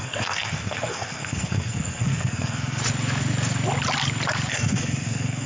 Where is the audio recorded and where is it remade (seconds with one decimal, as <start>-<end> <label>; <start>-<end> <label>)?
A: 0.0-2.8 remade; 2.8-4.5 recorded; 4.5-5.5 remade